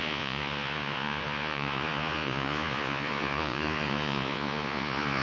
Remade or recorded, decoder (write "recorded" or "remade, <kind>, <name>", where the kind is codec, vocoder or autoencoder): remade, vocoder, Vocos